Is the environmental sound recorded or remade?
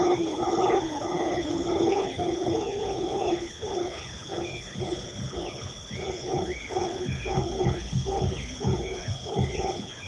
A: remade